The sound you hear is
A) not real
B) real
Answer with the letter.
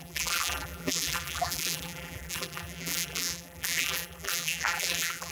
A